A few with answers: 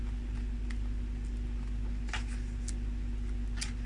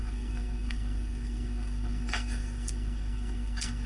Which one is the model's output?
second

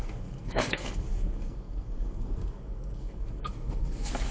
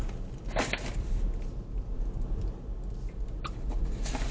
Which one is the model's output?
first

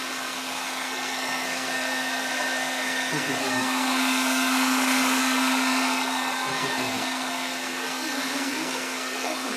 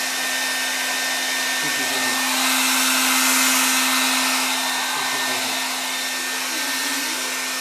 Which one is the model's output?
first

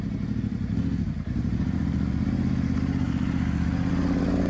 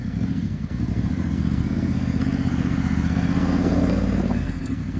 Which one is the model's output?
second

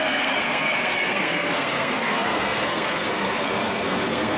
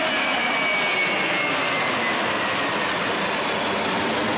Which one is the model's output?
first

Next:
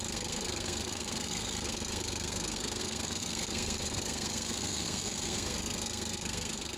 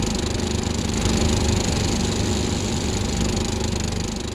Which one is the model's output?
first